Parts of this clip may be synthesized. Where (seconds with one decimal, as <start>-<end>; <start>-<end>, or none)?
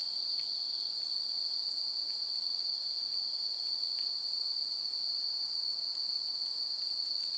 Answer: 0.0-0.5; 2.0-6.4